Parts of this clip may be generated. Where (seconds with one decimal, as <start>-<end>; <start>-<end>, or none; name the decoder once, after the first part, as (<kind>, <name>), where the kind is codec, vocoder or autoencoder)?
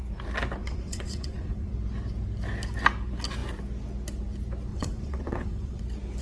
0.6-1.7 (vocoder, WaveNeXt); 4.7-5.8